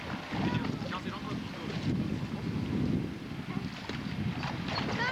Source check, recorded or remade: recorded